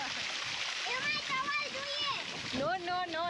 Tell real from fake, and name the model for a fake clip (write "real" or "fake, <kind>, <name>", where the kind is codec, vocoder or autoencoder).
real